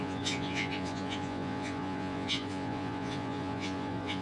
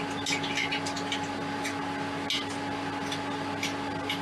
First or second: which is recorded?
second